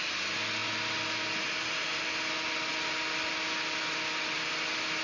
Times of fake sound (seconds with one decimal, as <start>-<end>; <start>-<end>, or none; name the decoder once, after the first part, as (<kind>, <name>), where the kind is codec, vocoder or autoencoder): none